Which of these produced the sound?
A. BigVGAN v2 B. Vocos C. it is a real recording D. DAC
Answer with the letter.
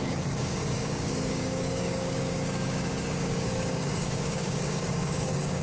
D